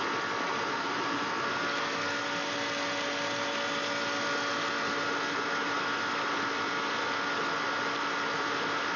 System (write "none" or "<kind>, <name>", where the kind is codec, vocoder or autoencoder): none